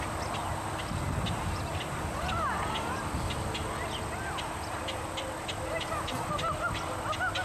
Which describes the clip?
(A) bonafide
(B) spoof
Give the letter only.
A